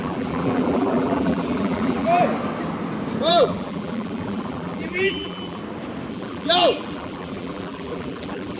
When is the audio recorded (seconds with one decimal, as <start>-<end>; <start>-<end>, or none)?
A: 2.2-3.3; 5.6-6.1